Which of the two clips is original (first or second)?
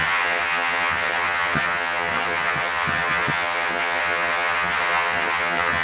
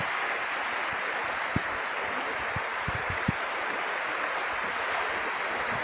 second